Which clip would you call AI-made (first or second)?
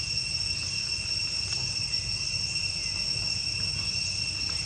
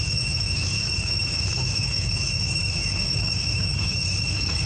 second